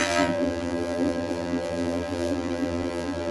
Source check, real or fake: fake